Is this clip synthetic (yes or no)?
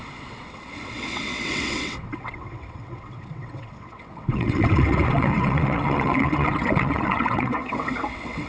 yes